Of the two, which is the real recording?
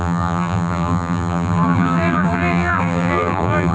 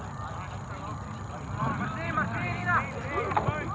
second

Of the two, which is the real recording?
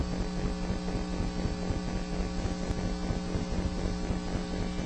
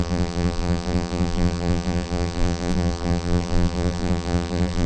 first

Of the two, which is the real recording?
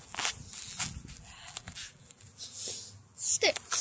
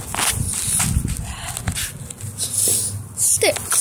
second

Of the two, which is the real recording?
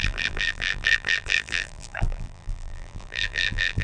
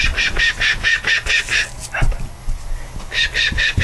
second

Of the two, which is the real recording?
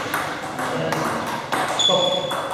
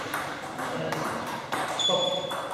first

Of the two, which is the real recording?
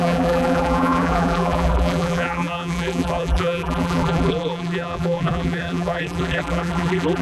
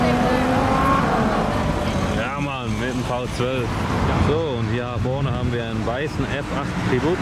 second